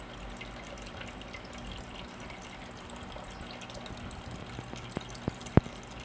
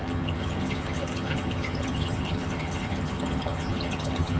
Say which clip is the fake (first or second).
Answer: second